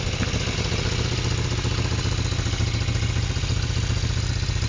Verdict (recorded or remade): recorded